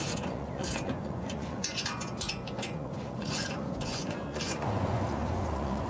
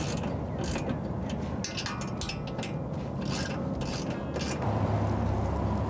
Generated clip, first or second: first